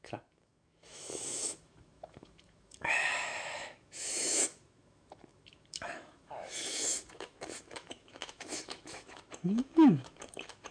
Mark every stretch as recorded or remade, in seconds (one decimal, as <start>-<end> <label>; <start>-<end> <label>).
0.0-10.7 remade

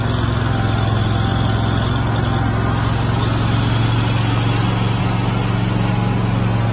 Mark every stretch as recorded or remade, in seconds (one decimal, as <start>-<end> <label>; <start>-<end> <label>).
0.0-6.7 recorded

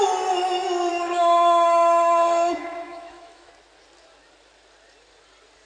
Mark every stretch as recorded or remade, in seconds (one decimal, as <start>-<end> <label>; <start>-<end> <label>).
0.0-0.9 recorded; 0.9-3.5 remade; 3.5-5.7 recorded